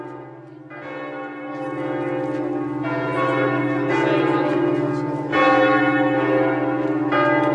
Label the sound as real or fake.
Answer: real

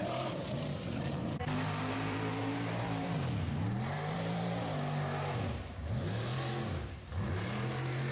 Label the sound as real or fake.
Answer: fake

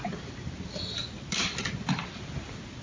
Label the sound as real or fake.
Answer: fake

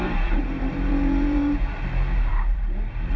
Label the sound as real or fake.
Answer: fake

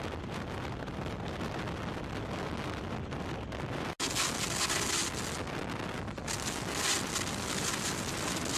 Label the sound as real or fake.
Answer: real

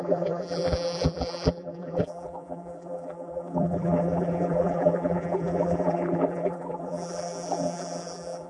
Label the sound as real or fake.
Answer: fake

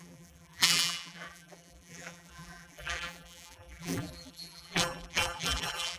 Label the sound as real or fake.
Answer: fake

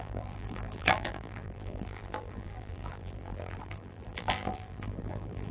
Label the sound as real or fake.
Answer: fake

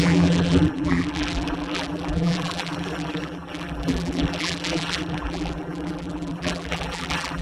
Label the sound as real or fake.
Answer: fake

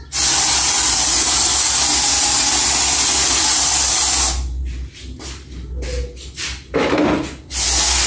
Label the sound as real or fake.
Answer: real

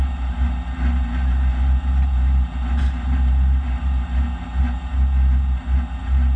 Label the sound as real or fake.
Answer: real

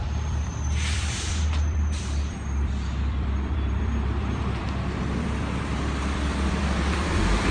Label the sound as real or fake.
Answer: fake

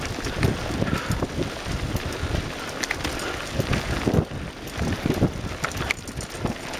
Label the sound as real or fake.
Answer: real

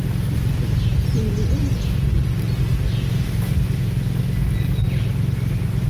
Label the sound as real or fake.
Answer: real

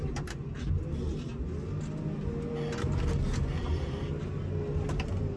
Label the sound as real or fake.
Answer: real